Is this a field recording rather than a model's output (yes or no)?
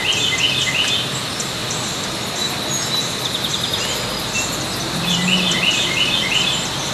yes